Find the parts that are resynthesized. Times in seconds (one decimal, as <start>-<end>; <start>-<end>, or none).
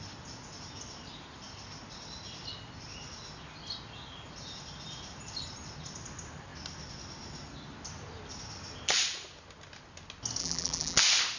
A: 10.4-11.0